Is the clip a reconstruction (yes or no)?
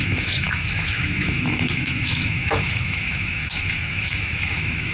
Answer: yes